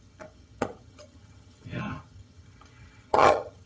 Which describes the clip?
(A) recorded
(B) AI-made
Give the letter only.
B